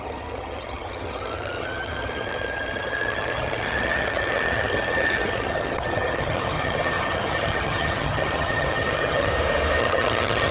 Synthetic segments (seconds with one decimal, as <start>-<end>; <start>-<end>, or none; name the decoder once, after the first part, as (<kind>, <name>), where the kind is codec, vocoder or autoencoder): 0.0-9.3 (vocoder, HiFi-GAN); 9.8-10.5